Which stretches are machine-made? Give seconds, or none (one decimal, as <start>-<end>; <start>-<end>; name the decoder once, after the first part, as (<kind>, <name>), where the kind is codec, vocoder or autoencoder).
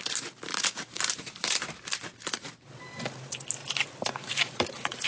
0.5-1.2 (vocoder, BigVGAN v2); 3.6-5.1